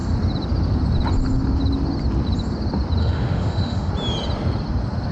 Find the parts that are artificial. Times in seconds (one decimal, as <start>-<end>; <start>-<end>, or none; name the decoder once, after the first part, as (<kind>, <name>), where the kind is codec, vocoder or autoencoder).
3.0-3.9 (autoencoder, DAC-VAE)